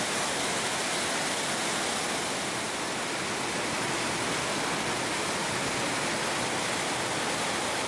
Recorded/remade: recorded